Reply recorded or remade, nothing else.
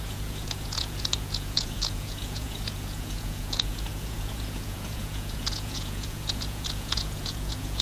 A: remade